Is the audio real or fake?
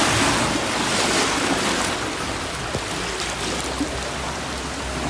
real